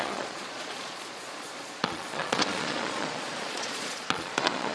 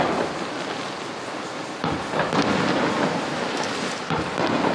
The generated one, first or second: first